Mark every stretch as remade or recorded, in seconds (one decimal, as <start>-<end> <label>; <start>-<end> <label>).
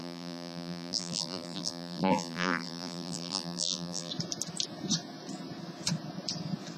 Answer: 0.0-4.1 remade; 4.1-6.8 recorded